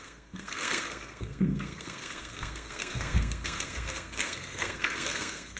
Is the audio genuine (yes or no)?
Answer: no